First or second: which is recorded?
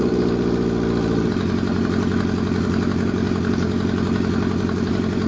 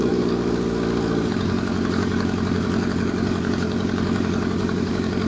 first